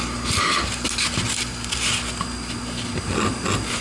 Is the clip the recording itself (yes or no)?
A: yes